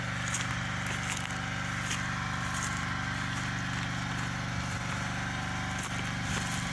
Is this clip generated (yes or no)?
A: no